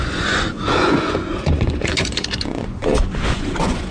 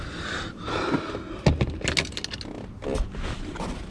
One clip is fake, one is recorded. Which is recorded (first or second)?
second